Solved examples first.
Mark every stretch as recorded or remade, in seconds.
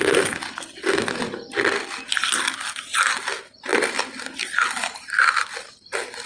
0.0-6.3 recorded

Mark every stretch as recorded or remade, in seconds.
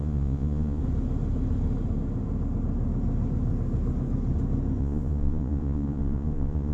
0.0-0.8 remade; 0.8-4.8 recorded; 4.8-6.7 remade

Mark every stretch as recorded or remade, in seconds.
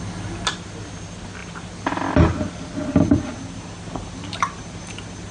0.0-5.3 recorded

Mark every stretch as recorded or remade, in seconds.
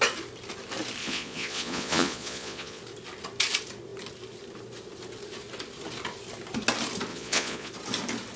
0.0-1.0 recorded; 1.0-2.8 remade; 2.8-7.1 recorded; 7.1-7.7 remade; 7.7-8.4 recorded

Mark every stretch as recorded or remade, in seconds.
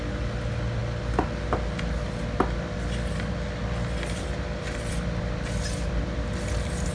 0.0-6.9 recorded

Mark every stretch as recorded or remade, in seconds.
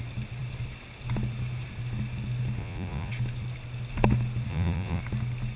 0.0-2.6 recorded; 2.6-3.1 remade; 3.1-4.5 recorded; 4.5-5.0 remade; 5.0-5.6 recorded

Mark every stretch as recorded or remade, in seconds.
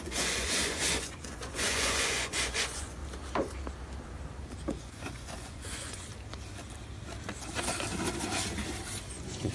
0.0-3.0 remade; 3.0-4.7 recorded; 4.7-6.1 remade; 6.1-9.1 recorded; 9.1-9.5 remade